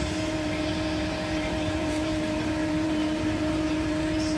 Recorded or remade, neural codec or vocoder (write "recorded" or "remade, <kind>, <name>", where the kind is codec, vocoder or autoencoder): remade, vocoder, BigVGAN v2